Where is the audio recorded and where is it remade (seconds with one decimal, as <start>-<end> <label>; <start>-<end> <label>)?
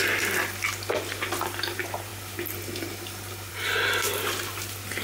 0.0-5.0 recorded